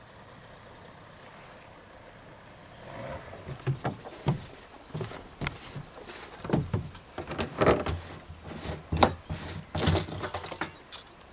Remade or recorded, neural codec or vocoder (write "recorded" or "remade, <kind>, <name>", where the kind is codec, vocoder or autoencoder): recorded